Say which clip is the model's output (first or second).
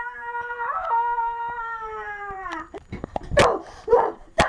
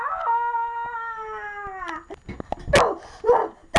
first